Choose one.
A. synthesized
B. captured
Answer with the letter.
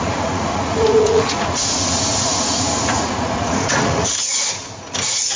A